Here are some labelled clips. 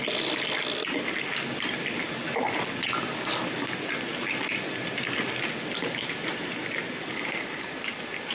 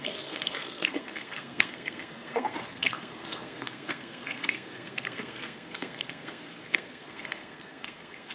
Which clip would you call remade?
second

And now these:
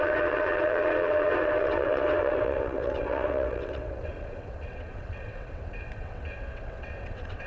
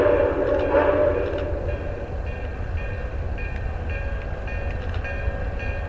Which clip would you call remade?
first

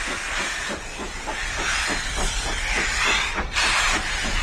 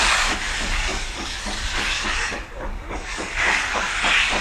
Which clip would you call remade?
second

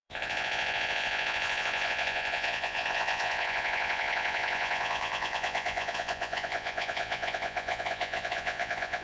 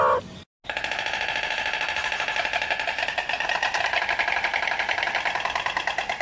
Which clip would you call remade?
first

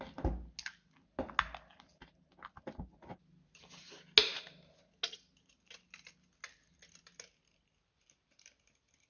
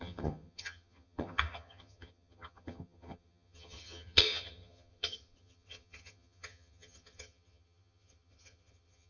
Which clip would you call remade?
second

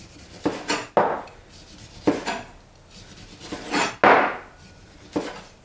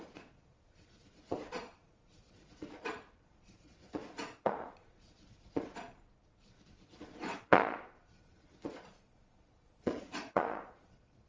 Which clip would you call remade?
second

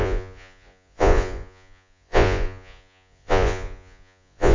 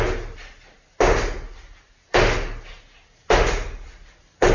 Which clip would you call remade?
first